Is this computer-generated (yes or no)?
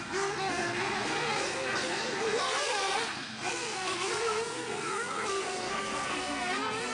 yes